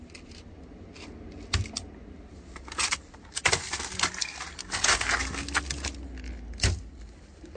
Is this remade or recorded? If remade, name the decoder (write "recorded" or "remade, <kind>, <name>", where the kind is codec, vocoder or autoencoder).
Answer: recorded